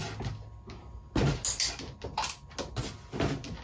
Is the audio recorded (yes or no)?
yes